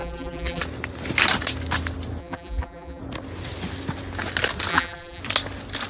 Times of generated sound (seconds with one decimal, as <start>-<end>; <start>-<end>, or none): 0.0-0.6; 2.2-3.0; 4.7-5.2